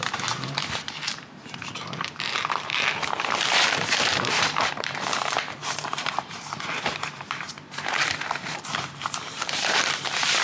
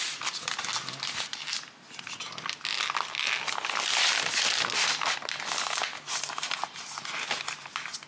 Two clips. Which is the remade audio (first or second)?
first